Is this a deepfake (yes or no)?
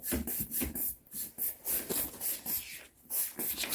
no